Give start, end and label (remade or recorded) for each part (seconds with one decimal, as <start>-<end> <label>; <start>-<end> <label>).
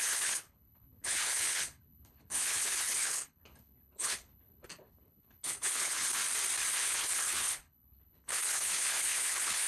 0.0-6.2 remade; 6.2-6.7 recorded; 6.7-9.7 remade